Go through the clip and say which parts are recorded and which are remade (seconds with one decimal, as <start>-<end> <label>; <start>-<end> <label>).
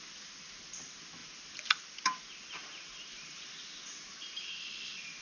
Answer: 0.0-2.6 recorded; 2.6-4.6 remade; 4.6-5.2 recorded